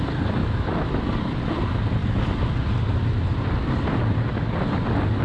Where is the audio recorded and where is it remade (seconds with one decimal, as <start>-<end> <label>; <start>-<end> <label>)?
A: 0.0-0.4 recorded; 0.4-1.0 remade; 1.0-5.2 recorded